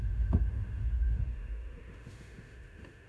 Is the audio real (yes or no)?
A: no